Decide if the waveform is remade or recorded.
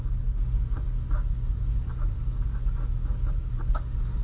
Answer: remade